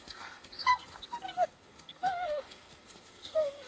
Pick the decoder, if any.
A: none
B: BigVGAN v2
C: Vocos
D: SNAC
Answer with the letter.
D